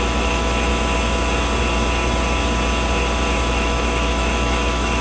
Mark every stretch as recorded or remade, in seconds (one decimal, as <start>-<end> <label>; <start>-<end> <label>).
0.0-0.7 remade; 0.7-3.5 recorded; 3.5-5.0 remade